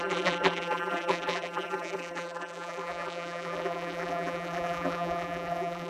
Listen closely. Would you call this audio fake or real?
fake